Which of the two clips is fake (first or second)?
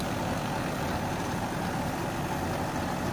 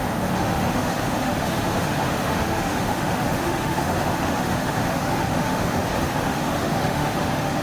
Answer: second